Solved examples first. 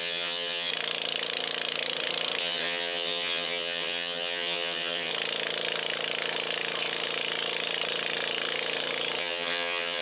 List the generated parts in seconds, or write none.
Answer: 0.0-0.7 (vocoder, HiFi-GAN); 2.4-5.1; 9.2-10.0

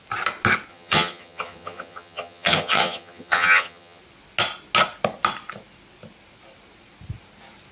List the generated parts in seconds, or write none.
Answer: 0.7-4.0 (vocoder, HiFi-GAN)

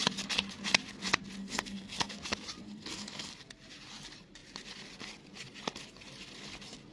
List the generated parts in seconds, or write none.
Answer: 1.4-2.1 (codec, SNAC); 2.6-3.3